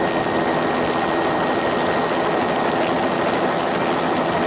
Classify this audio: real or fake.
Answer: real